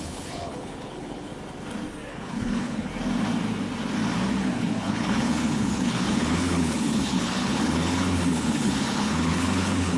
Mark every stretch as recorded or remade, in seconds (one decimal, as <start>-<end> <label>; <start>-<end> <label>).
0.0-1.3 remade; 1.3-2.1 recorded; 2.1-2.9 remade; 2.9-4.4 recorded; 4.4-10.0 remade